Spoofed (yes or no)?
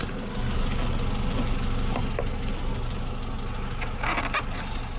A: no